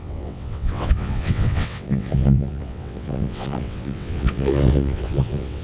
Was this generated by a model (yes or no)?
yes